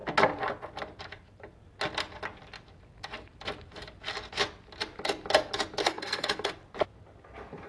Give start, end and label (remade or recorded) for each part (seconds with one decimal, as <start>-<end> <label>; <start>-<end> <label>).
0.0-5.8 recorded; 5.8-6.5 remade; 6.5-7.7 recorded